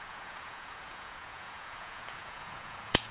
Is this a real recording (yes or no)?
no